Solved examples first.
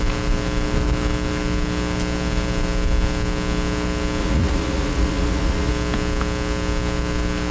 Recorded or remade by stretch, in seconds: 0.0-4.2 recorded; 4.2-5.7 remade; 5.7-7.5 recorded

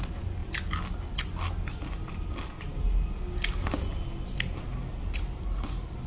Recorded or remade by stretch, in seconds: 0.0-6.1 recorded

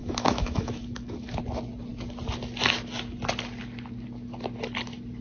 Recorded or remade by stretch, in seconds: 0.0-1.4 remade; 1.4-5.2 recorded

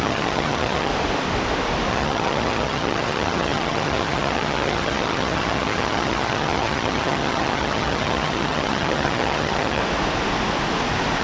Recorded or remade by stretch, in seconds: 0.0-0.9 remade; 0.9-1.9 recorded; 1.9-9.8 remade; 9.8-11.2 recorded

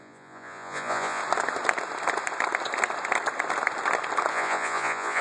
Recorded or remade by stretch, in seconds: 0.0-1.2 remade; 1.2-4.3 recorded; 4.3-5.2 remade

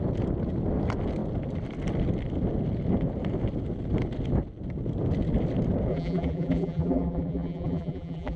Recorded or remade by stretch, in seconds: 0.0-5.9 recorded; 5.9-8.4 remade

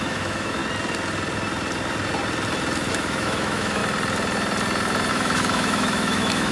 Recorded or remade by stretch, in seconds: 0.0-0.6 remade; 0.6-2.9 recorded; 2.9-3.8 remade; 3.8-5.1 recorded; 5.1-6.5 remade

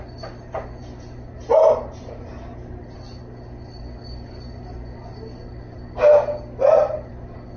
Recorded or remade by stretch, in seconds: 0.0-7.6 recorded